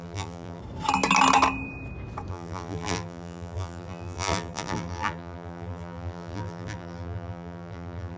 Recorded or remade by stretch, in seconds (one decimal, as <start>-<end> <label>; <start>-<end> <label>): 0.0-0.6 remade; 0.6-2.3 recorded; 2.3-8.2 remade